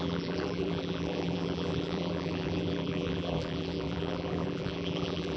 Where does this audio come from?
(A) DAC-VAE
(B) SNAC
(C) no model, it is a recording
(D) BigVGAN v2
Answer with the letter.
D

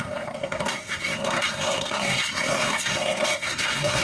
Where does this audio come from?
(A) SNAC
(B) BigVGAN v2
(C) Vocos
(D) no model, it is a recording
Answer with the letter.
A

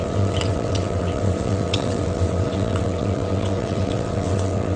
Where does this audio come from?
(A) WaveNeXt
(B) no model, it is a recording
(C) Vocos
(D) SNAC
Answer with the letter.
A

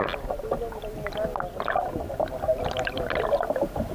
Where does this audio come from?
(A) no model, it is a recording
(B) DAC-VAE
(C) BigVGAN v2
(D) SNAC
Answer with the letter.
A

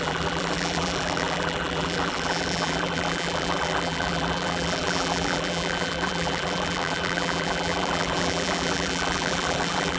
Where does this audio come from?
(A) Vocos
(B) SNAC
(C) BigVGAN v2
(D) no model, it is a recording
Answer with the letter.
C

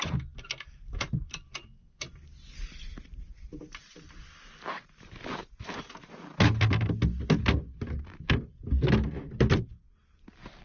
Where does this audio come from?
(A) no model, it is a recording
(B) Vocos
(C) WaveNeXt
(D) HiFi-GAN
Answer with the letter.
A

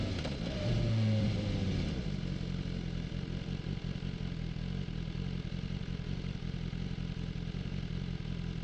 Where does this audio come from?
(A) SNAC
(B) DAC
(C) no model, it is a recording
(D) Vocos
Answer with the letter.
C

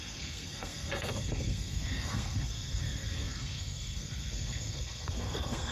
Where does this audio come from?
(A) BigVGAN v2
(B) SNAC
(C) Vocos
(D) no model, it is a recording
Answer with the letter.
B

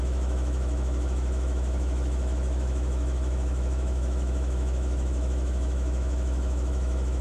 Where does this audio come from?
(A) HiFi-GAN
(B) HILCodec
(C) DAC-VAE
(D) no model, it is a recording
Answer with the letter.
C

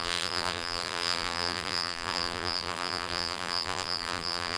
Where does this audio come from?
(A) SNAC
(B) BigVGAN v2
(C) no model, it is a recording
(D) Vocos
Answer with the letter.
B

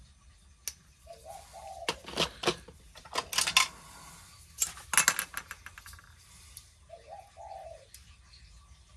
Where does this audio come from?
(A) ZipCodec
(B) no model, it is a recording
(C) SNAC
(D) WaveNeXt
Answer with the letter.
B